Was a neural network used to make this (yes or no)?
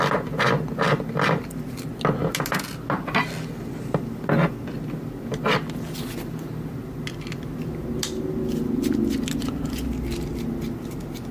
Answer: no